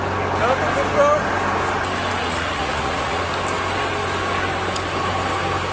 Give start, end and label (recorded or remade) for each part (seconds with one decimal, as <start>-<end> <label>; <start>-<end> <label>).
0.0-2.2 recorded; 2.2-3.3 remade; 3.3-5.7 recorded